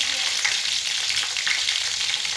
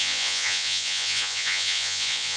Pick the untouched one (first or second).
first